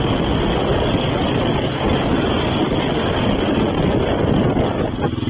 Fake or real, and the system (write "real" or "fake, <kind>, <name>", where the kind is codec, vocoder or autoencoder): real